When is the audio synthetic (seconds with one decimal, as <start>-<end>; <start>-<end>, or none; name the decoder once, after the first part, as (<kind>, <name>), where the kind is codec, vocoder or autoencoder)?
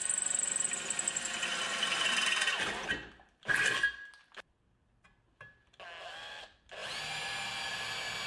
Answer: none